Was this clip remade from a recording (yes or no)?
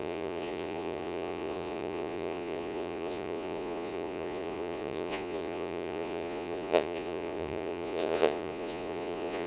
yes